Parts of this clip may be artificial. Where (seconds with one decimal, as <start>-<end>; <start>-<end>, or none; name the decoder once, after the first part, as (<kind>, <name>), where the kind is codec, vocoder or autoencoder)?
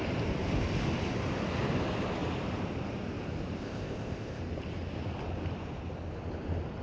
3.6-4.4 (codec, ZipCodec)